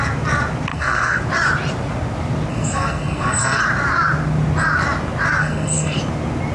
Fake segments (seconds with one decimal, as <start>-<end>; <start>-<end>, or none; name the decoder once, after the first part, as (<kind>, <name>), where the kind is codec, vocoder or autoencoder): 0.7-1.2 (codec, SNAC); 2.5-3.6; 5.4-6.0